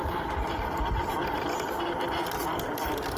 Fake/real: real